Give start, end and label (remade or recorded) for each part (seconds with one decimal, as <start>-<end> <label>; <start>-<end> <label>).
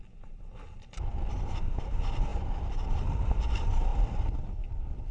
0.0-5.1 recorded